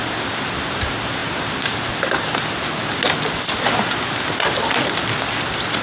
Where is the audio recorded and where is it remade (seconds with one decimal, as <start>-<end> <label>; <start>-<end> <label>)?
0.0-5.8 recorded